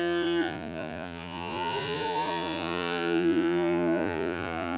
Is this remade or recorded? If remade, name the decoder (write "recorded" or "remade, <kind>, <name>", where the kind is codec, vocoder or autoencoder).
remade, vocoder, Vocos